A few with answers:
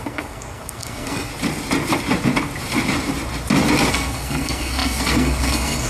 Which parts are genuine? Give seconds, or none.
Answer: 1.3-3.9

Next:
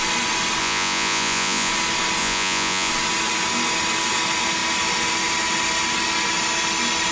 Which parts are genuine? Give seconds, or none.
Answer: 0.0-0.6; 1.7-2.2; 2.9-7.1

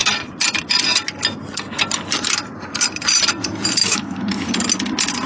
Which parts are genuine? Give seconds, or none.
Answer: 0.0-3.8; 4.5-5.3

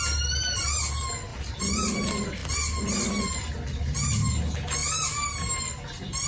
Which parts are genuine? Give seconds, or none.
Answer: 0.0-1.3; 1.9-6.3

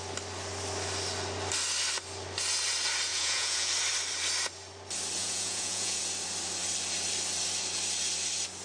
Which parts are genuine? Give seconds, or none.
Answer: 0.0-3.1; 3.7-5.2; 6.0-8.6

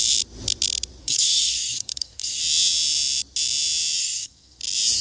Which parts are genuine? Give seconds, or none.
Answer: 0.0-1.0; 2.4-4.0; 4.6-5.0

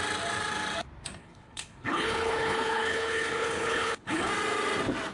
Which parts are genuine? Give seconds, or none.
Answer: 0.0-1.2; 4.3-5.1